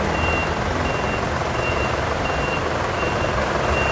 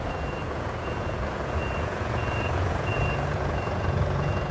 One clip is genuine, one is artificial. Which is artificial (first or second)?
second